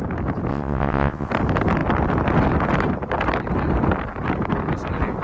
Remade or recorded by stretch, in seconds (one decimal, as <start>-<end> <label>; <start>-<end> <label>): 0.0-0.5 recorded; 0.5-1.3 remade; 1.3-5.2 recorded